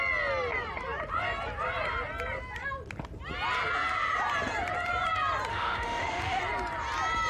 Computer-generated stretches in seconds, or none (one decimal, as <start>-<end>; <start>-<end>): 5.5-6.4